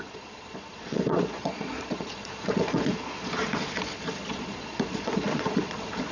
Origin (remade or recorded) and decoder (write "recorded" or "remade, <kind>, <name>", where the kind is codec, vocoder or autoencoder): remade, vocoder, Vocos